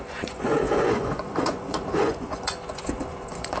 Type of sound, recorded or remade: remade